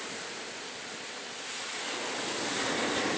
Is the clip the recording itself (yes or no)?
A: yes